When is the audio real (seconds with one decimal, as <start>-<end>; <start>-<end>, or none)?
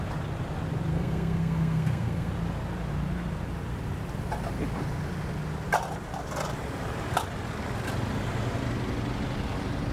0.0-0.9; 2.3-9.9